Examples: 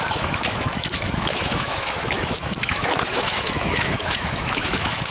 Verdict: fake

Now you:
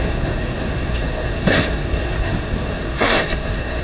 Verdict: fake